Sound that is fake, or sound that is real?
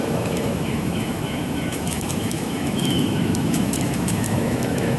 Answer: fake